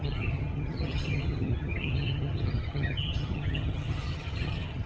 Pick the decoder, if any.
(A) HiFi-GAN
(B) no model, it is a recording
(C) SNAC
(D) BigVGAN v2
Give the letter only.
A